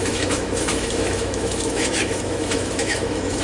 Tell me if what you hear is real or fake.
fake